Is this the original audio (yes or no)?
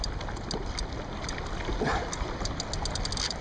yes